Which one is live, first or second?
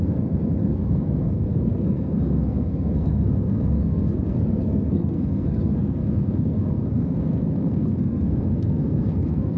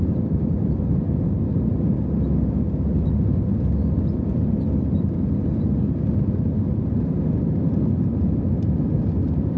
second